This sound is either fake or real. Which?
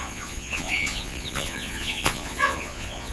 fake